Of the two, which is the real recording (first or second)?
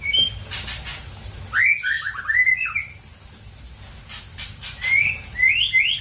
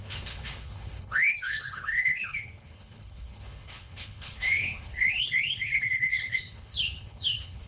first